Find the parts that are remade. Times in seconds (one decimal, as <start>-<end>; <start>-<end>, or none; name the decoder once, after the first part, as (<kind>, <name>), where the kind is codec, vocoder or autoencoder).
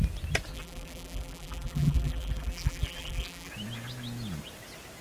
0.5-3.5 (vocoder, BigVGAN v2)